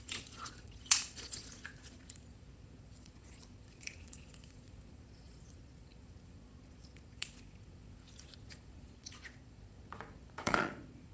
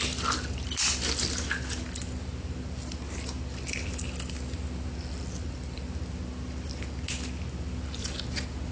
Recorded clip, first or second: second